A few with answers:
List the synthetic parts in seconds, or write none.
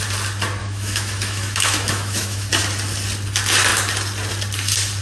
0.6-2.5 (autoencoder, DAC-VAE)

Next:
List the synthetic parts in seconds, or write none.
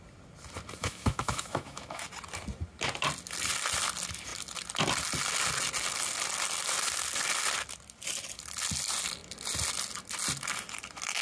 0.8-2.0 (autoencoder, DAC-VAE)